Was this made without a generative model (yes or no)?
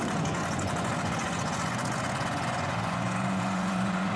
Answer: no